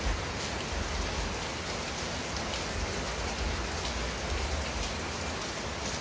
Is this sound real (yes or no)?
yes